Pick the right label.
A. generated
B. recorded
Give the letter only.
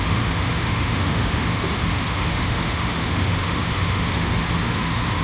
A